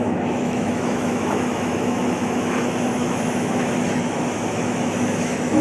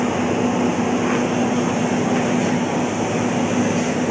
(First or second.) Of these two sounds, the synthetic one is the first